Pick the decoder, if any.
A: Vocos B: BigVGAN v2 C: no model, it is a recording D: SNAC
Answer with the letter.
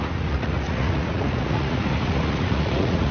A